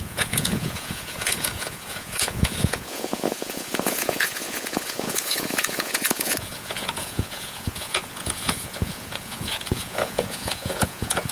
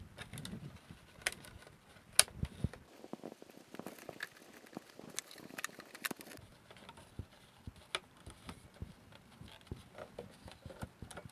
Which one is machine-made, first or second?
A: first